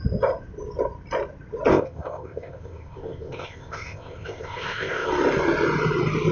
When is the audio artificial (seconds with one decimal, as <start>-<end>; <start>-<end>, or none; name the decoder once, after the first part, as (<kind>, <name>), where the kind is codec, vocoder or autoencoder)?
1.7-5.1 (codec, ZipCodec)